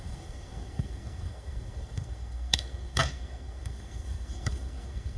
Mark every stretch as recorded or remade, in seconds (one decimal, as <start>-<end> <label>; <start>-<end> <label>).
0.0-5.2 remade